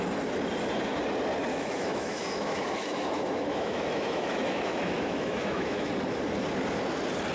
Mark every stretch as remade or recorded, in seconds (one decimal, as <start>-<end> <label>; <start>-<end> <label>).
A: 0.0-1.5 recorded; 1.5-5.9 remade; 5.9-7.3 recorded